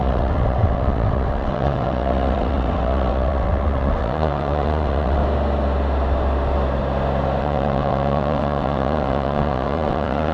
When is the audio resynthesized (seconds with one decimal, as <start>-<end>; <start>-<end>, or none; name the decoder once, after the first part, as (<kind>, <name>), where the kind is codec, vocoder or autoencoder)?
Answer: 0.0-5.2 (vocoder, WaveNeXt); 7.4-10.3